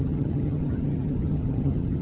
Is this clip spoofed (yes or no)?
yes